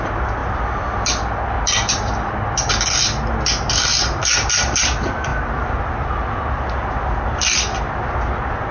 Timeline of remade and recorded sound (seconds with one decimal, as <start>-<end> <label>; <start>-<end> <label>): 0.0-8.7 recorded